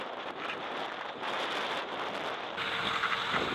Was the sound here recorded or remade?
recorded